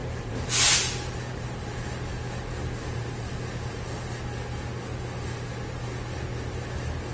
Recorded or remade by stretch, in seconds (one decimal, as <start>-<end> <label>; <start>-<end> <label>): 0.0-2.1 remade; 2.1-2.6 recorded; 2.6-4.2 remade; 4.2-7.1 recorded